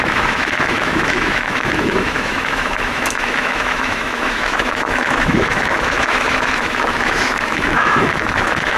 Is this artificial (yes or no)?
yes